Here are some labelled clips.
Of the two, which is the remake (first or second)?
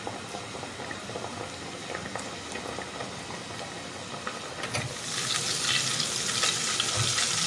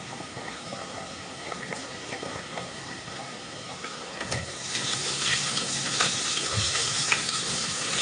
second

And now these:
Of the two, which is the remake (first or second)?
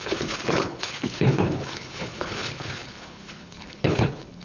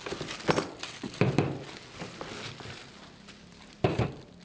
first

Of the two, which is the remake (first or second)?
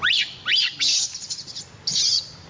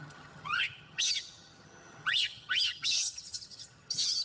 second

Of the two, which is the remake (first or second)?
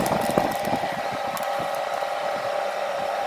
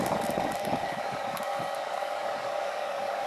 second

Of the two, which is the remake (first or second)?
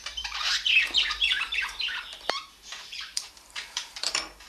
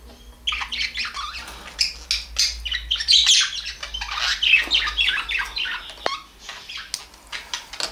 first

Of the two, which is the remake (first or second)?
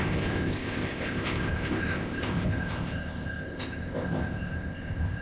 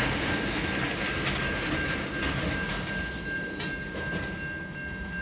first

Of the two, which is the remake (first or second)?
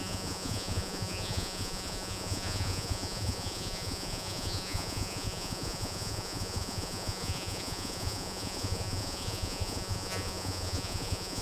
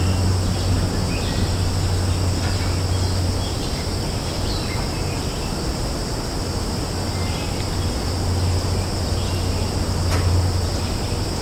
first